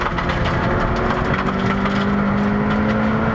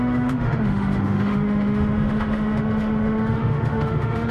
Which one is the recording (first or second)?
first